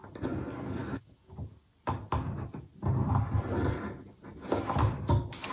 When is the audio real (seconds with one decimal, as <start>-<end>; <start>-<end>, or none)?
0.0-0.8; 1.3-5.5